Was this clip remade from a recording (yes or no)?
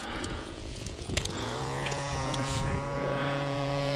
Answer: yes